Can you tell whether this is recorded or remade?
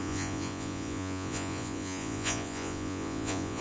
remade